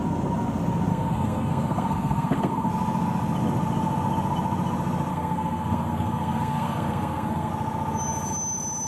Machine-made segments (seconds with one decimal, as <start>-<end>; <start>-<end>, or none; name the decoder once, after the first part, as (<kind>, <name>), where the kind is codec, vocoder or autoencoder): 0.9-2.7 (codec, SNAC); 5.1-7.5